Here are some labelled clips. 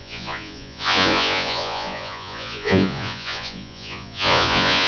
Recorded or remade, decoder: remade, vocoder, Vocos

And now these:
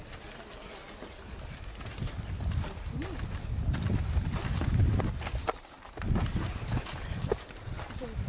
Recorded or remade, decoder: recorded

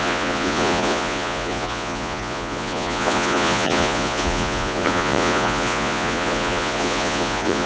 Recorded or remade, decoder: remade, vocoder, Vocos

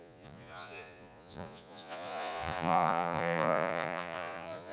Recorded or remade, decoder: remade, vocoder, Vocos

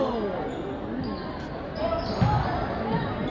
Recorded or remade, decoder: recorded